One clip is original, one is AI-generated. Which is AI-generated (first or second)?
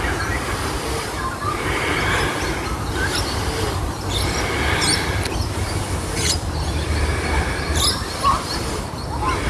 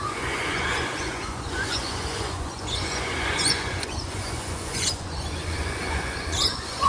second